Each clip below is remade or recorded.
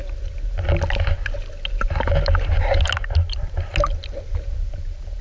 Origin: recorded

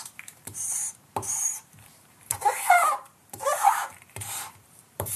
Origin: remade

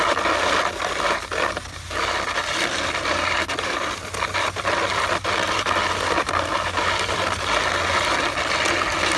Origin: recorded